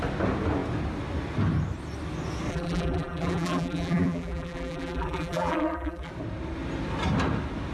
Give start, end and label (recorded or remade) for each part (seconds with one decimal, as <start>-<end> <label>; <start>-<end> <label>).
0.0-2.5 recorded; 2.5-6.1 remade; 6.1-7.7 recorded